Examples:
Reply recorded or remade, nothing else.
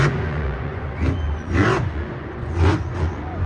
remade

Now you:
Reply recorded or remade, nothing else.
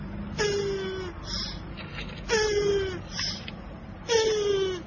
recorded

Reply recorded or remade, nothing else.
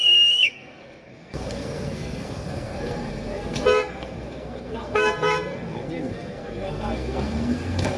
remade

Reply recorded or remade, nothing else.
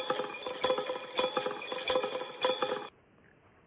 recorded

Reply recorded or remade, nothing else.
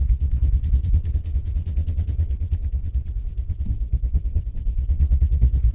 remade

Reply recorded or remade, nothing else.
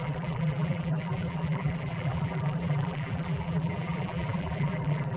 remade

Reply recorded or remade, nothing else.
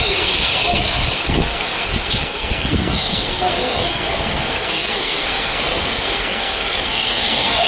remade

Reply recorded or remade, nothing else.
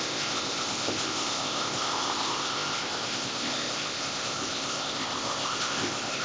remade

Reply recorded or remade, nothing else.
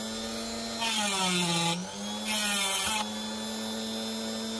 recorded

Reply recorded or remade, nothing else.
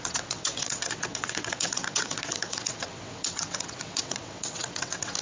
remade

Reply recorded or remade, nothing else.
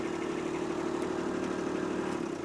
recorded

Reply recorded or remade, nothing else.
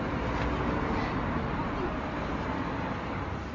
recorded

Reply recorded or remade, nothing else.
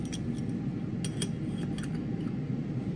recorded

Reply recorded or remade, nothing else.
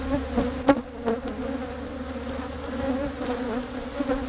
recorded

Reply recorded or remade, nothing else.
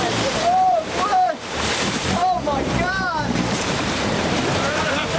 remade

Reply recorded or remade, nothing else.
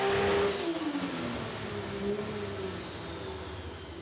recorded